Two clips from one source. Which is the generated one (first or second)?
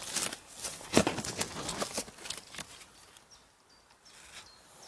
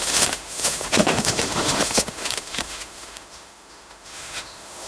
second